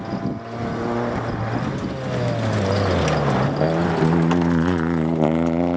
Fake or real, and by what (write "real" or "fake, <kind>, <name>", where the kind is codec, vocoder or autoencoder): real